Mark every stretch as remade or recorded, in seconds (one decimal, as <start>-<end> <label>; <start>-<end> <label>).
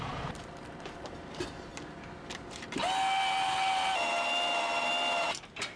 0.0-1.7 remade; 1.7-5.2 recorded; 5.2-5.8 remade